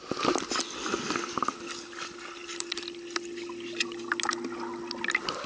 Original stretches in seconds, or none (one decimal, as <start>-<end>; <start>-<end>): 0.0-5.5